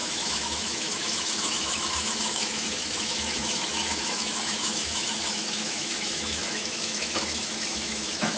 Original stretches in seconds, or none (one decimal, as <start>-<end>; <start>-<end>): none